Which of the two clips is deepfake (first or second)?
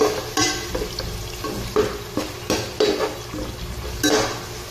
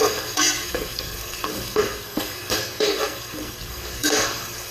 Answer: second